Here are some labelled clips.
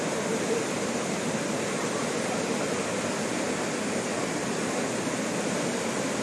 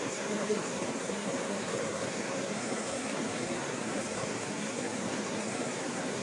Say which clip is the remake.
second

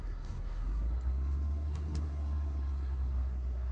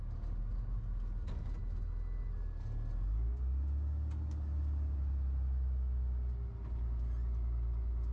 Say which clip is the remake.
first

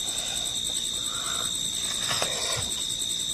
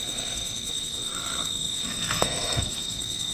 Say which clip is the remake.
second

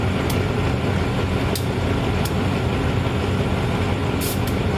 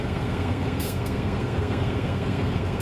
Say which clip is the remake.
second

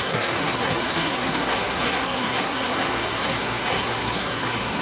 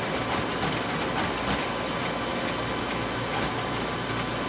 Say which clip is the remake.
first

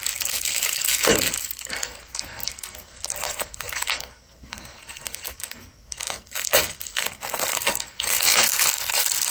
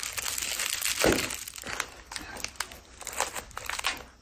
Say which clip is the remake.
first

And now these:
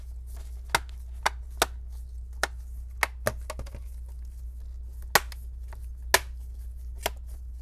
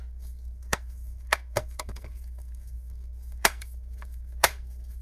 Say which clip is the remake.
second